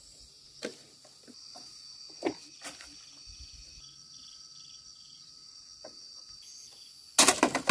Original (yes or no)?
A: yes